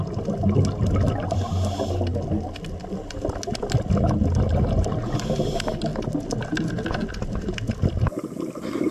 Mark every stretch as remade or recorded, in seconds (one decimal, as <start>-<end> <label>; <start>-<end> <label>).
0.0-8.9 recorded